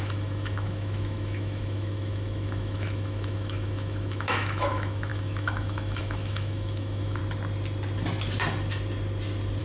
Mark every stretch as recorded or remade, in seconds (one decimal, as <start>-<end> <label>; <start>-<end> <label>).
0.0-7.2 remade; 7.2-9.6 recorded